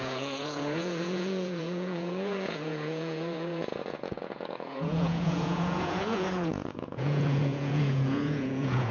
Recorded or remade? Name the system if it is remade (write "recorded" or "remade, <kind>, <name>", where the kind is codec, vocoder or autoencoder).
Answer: remade, vocoder, Vocos